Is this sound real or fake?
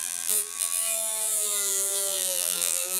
fake